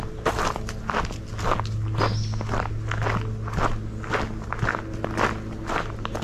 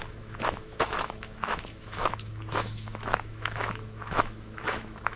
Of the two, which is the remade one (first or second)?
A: second